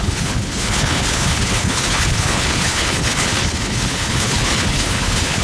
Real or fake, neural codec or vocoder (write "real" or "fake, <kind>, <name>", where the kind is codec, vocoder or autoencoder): fake, codec, HILCodec